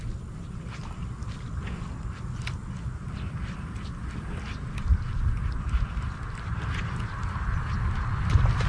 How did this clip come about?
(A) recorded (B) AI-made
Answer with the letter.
A